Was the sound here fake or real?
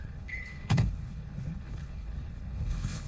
fake